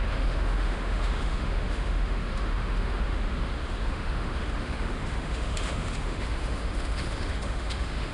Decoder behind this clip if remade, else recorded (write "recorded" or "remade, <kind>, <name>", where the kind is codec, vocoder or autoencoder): remade, autoencoder, DAC-VAE